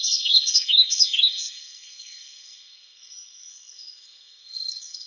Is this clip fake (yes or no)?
yes